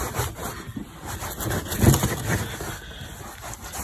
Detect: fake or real real